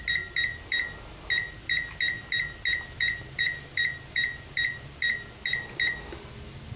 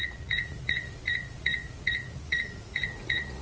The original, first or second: first